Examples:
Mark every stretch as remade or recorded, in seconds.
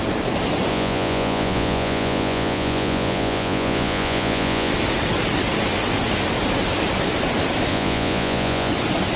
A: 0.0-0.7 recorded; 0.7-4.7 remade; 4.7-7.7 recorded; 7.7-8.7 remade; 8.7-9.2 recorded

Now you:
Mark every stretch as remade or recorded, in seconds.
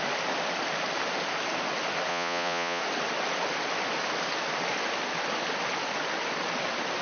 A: 0.0-2.1 recorded; 2.1-2.8 remade; 2.8-7.0 recorded